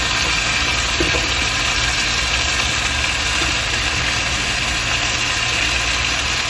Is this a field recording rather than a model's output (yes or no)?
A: yes